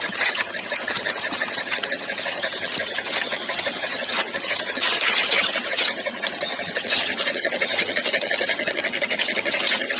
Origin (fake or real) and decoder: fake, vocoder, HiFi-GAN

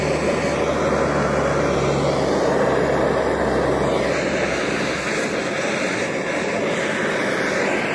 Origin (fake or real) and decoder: real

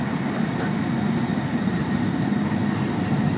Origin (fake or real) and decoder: real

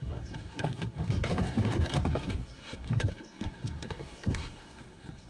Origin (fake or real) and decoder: fake, codec, SNAC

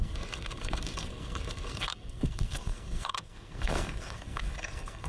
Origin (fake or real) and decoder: fake, codec, SNAC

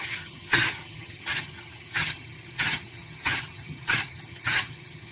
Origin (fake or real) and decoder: fake, vocoder, HiFi-GAN